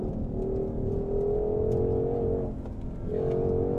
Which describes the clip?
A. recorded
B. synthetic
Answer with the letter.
A